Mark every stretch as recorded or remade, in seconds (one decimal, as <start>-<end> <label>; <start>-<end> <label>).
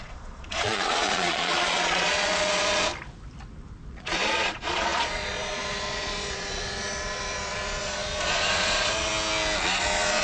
0.0-2.9 remade; 2.9-3.9 recorded; 3.9-9.1 remade; 9.1-9.7 recorded; 9.7-10.2 remade